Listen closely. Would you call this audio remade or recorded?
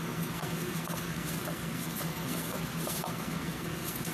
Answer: remade